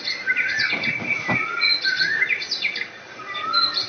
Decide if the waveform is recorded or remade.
recorded